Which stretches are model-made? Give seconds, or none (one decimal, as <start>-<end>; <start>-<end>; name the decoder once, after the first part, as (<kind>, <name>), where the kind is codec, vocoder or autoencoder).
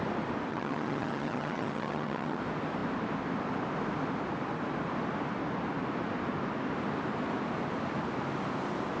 0.5-2.4 (vocoder, HiFi-GAN)